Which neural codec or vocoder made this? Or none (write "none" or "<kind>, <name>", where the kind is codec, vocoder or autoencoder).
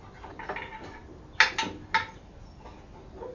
none